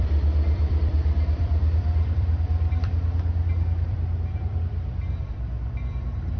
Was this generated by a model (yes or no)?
yes